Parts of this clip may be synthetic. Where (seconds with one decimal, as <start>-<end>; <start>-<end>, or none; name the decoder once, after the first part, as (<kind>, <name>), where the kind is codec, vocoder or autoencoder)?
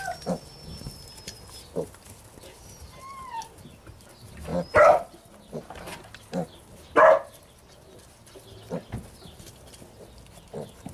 none